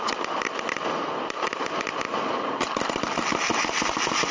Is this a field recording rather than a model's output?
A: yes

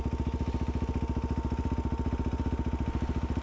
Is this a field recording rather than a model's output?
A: yes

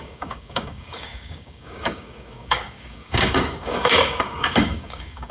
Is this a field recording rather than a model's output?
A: no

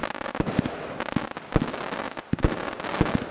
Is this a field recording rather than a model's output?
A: yes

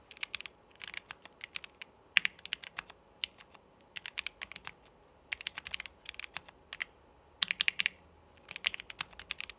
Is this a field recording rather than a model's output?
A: yes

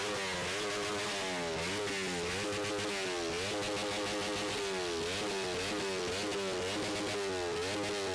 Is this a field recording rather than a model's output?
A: yes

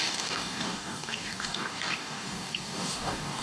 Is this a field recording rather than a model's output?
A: no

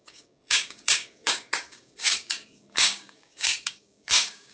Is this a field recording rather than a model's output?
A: no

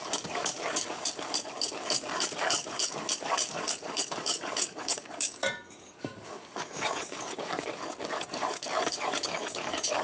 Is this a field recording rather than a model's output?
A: no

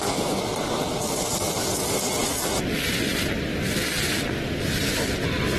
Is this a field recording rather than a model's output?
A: yes